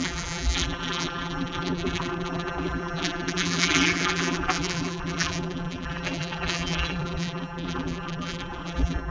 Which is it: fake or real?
fake